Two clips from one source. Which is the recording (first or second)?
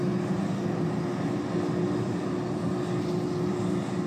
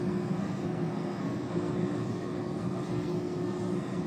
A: first